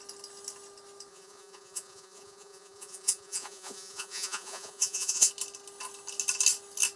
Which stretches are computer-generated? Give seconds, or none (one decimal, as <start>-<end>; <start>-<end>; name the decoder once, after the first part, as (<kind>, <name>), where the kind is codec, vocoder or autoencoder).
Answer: 1.1-5.3 (vocoder, Vocos)